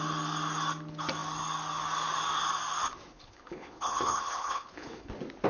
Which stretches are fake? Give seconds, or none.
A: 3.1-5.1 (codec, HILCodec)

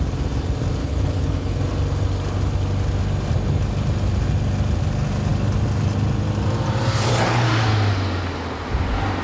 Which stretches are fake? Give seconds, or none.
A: 0.8-1.6 (codec, HILCodec)

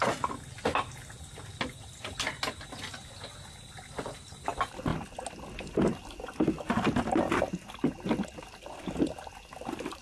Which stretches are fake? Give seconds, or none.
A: none